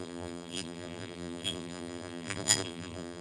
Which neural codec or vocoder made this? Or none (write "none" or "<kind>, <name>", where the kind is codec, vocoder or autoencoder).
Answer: vocoder, BigVGAN v2